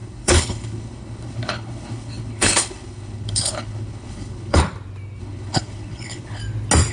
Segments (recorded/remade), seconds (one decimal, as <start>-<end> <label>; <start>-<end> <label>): 0.0-4.6 remade; 4.6-5.2 recorded; 5.2-6.4 remade; 6.4-6.9 recorded